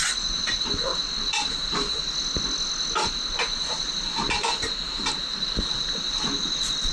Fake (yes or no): no